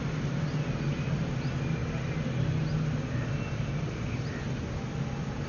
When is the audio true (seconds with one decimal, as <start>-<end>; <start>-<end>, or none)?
0.0-5.5